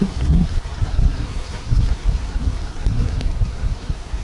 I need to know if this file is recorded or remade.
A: remade